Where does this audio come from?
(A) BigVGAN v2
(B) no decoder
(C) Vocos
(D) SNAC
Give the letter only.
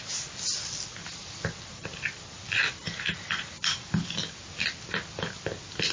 B